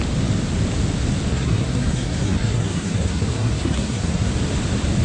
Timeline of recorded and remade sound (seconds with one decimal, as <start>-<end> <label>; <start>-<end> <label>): 0.0-1.3 recorded; 1.3-4.3 remade; 4.3-5.0 recorded